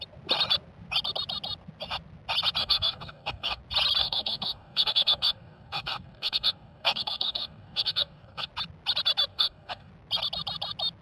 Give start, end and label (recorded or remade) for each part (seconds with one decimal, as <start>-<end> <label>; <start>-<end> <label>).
0.0-2.6 recorded; 2.6-3.6 remade; 3.6-4.0 recorded; 4.0-8.5 remade; 8.5-9.3 recorded; 9.3-9.9 remade; 9.9-11.0 recorded